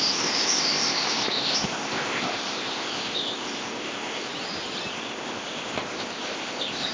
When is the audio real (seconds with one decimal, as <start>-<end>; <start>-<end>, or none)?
4.3-4.9